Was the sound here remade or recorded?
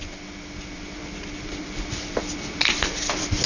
recorded